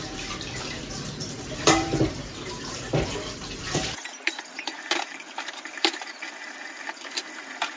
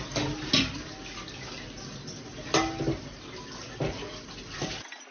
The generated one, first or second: first